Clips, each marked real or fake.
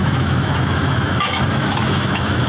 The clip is fake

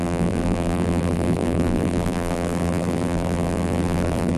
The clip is fake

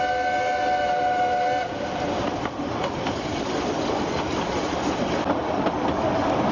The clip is real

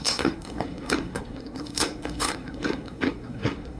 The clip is fake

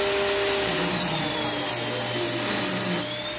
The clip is real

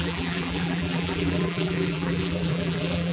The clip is fake